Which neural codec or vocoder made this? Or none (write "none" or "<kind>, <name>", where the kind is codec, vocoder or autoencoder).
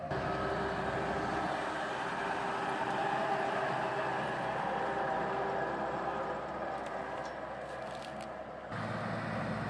none